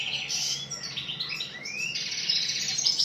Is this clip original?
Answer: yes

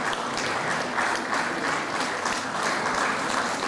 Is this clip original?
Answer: yes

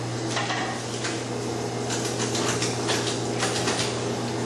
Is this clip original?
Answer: yes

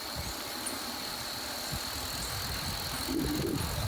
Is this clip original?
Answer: yes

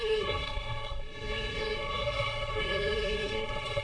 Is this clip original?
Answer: no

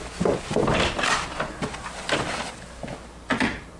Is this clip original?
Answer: yes